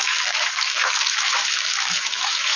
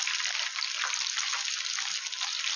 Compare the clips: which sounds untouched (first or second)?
second